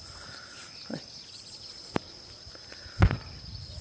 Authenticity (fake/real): real